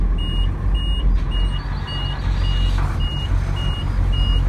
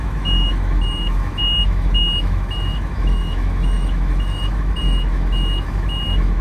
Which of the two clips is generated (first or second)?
second